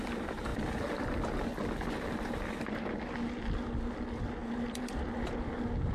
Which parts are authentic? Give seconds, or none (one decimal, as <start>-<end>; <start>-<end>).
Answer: 0.0-4.4; 5.2-5.9